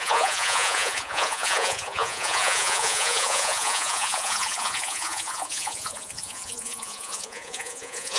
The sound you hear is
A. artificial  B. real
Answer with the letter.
A